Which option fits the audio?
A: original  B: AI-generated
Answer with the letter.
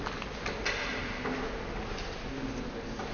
A